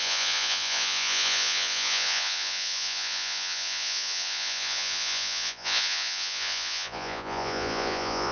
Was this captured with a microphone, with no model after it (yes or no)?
no